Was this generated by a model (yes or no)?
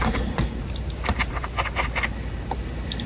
yes